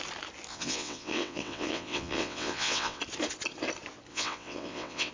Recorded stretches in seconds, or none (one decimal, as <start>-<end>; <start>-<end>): 0.0-0.5; 3.0-4.1